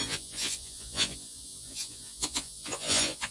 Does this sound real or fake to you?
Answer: fake